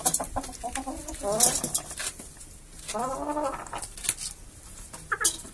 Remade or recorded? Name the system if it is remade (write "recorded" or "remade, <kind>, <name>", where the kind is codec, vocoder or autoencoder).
recorded